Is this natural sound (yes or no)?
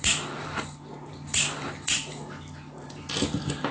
no